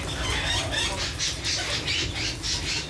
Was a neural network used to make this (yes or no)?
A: no